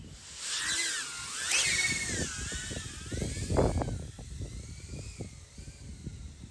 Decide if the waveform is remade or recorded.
recorded